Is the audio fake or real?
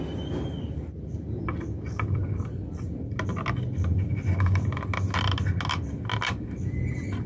real